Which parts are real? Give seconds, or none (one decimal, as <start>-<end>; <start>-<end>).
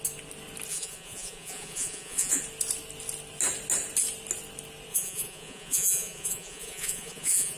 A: 0.0-0.7; 2.4-4.9